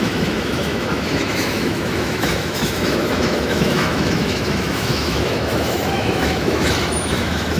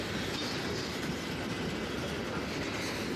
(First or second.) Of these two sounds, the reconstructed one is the first